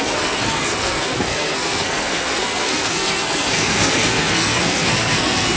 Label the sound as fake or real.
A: fake